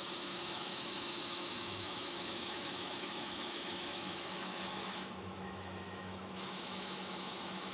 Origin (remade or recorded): remade